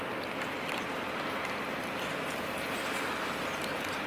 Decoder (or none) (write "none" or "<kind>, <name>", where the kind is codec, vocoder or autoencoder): none